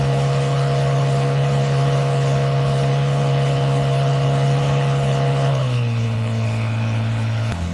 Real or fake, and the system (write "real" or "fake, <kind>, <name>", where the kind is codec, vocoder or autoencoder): fake, codec, HILCodec